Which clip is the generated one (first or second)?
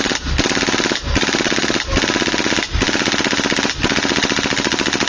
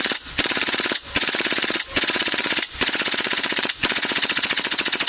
second